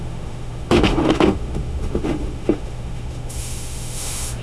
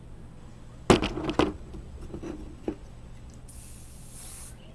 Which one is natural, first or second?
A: second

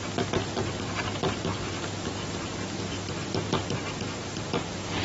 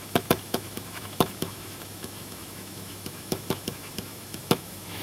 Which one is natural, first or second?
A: first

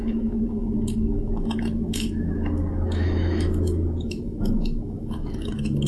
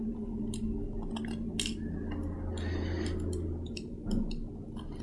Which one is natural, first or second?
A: second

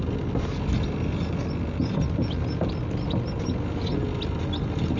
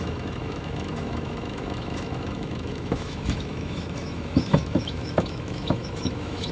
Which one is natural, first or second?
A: first